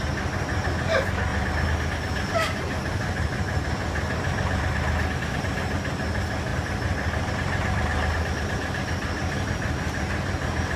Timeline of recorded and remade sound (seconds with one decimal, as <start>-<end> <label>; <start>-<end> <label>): 0.0-1.3 recorded; 1.3-5.4 remade; 5.4-6.5 recorded; 6.5-7.3 remade; 7.3-7.9 recorded; 7.9-9.6 remade; 9.6-10.8 recorded